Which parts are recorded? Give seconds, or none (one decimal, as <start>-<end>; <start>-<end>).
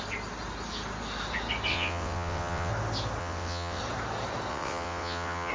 0.0-1.7; 2.7-3.2; 3.8-4.5